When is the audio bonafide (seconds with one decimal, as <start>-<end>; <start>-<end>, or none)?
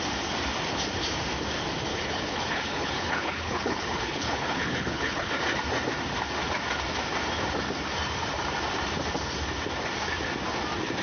0.0-1.9; 5.3-11.0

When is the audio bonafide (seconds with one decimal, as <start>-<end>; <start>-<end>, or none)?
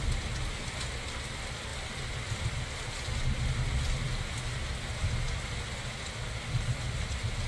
0.0-7.5